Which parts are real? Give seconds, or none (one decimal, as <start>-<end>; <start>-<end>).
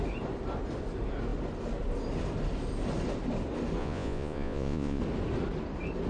0.0-3.8; 5.0-6.1